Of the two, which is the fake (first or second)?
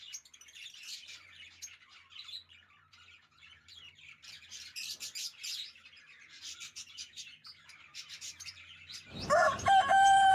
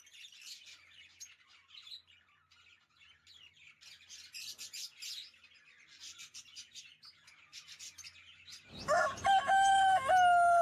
first